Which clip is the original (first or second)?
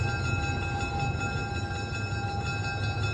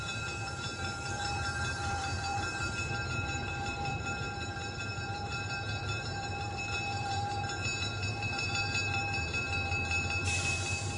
first